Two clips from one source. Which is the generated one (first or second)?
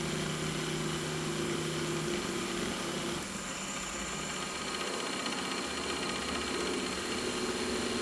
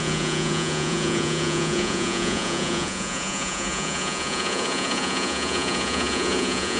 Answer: second